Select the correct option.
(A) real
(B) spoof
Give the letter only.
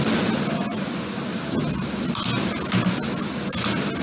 A